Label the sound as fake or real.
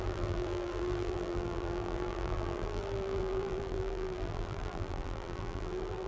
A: fake